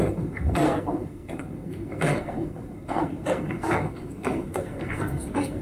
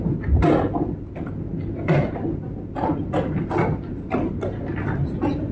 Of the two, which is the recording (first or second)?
second